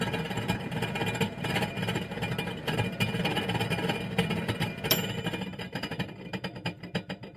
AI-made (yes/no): no